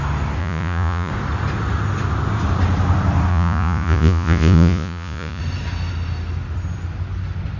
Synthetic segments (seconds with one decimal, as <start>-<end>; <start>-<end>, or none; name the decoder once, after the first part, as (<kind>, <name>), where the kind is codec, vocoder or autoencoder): 0.4-1.1 (vocoder, Vocos); 3.3-5.4